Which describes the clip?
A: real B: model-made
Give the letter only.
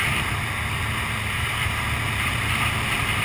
B